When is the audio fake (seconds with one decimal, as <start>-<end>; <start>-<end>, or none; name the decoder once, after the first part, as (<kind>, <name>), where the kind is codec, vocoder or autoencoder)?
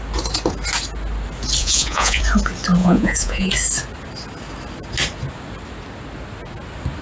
1.6-2.2 (vocoder, Vocos); 2.8-3.5